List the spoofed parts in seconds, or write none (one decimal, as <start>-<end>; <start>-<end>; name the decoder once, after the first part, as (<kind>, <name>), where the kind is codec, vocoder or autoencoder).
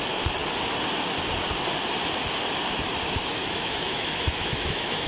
3.4-5.1 (autoencoder, DAC-VAE)